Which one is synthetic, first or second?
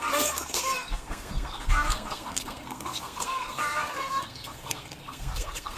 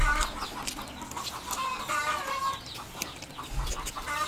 first